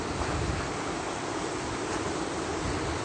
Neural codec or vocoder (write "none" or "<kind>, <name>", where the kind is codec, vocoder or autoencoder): none